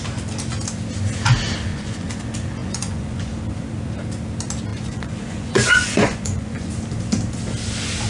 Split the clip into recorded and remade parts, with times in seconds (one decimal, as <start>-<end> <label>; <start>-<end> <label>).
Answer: 0.0-1.7 recorded; 1.7-2.2 remade; 2.2-2.6 recorded; 2.6-3.3 remade; 3.3-4.7 recorded; 4.7-6.7 remade; 6.7-8.1 recorded